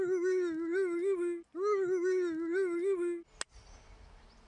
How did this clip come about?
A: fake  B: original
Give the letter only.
B